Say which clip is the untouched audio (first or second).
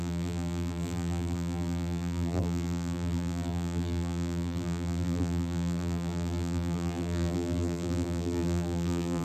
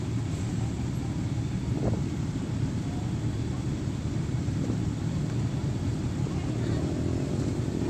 second